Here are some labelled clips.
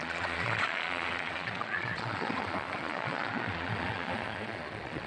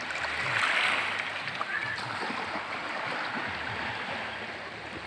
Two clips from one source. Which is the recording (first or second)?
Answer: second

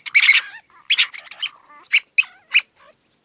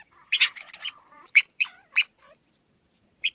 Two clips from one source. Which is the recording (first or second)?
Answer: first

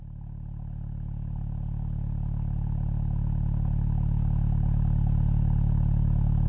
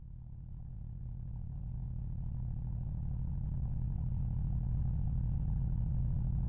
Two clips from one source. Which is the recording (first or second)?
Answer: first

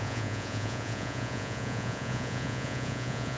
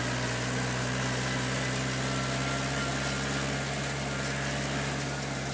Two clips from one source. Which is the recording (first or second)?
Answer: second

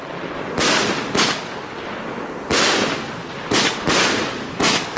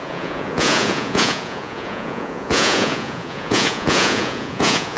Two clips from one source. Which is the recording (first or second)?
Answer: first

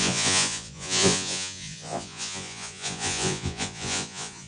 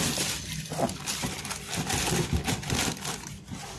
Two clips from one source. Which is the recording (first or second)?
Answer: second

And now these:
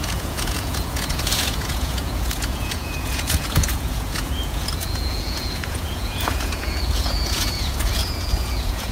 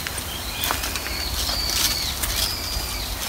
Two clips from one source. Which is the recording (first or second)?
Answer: second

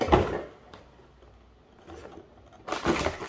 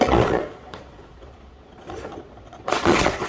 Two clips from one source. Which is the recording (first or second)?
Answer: first